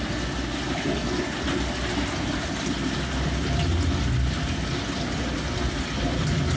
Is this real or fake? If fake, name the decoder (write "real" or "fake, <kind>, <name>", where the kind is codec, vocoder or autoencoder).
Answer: real